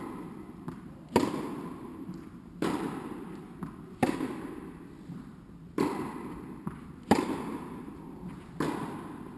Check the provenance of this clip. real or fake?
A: fake